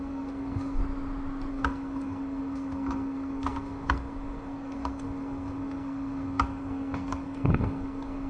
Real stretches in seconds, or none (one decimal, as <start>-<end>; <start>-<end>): 0.8-1.5